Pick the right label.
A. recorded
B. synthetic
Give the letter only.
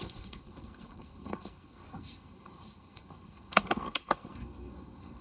B